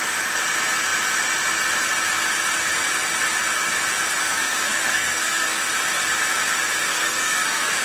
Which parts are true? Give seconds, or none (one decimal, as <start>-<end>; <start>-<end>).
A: 0.0-4.2; 5.7-6.9